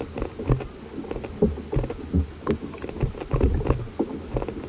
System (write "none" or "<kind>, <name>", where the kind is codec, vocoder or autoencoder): none